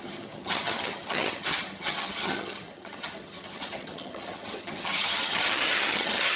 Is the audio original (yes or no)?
no